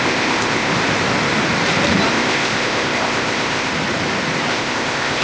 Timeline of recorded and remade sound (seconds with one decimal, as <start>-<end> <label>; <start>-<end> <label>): 0.0-0.7 remade; 0.7-2.1 recorded; 2.1-3.7 remade; 3.7-4.5 recorded; 4.5-5.2 remade